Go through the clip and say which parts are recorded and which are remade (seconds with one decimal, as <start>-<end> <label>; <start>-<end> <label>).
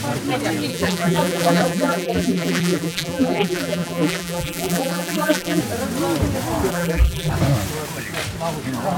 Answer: 0.0-0.7 recorded; 0.7-5.6 remade; 5.6-6.7 recorded; 6.7-7.3 remade; 7.3-9.0 recorded